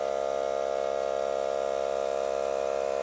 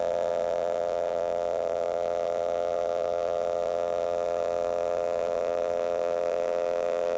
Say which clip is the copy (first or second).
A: second